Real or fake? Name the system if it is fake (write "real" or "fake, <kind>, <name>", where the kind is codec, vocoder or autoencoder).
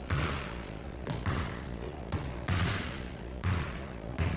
fake, vocoder, Vocos